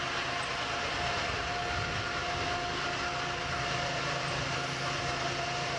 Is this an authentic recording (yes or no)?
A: yes